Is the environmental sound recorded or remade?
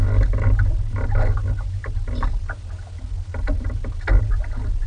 recorded